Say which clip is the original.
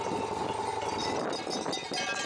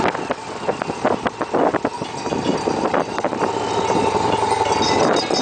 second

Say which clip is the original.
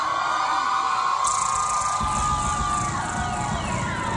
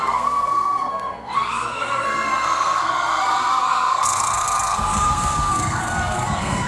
first